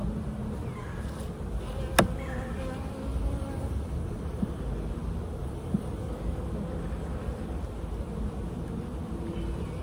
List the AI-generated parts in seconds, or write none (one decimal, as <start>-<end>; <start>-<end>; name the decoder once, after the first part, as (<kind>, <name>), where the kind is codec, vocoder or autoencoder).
3.1-4.6 (vocoder, BigVGAN v2); 5.4-6.1